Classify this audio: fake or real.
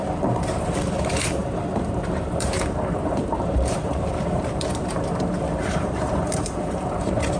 fake